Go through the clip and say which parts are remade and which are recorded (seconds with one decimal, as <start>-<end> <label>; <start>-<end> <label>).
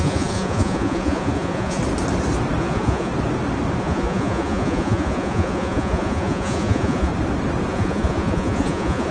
0.0-1.8 remade; 1.8-2.6 recorded; 2.6-3.1 remade; 3.1-3.8 recorded; 3.8-7.1 remade; 7.1-7.7 recorded; 7.7-9.1 remade